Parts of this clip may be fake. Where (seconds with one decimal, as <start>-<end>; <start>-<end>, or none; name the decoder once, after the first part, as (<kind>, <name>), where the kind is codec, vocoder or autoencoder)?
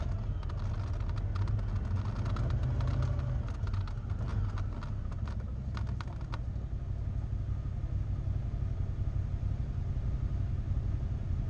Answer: none